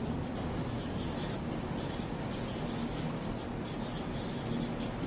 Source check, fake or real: real